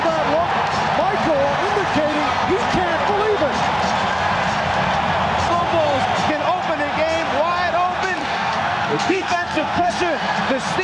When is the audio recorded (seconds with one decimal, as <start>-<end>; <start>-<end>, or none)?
0.0-8.2; 9.9-10.8